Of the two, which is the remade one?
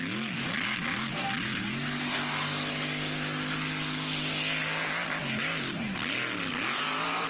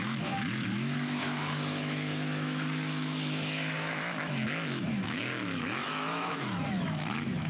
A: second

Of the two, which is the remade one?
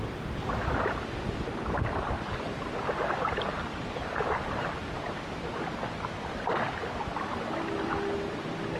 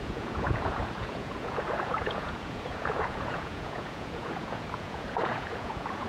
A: second